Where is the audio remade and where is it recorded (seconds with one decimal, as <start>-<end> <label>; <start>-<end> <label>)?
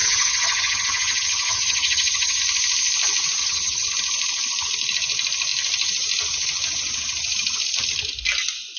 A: 0.0-2.4 remade; 2.4-3.4 recorded; 3.4-3.9 remade; 3.9-8.8 recorded